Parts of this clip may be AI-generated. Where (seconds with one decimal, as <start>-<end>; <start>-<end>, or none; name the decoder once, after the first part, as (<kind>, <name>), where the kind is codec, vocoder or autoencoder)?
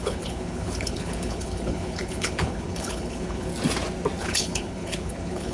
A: 0.0-3.5 (codec, HILCodec); 4.2-5.5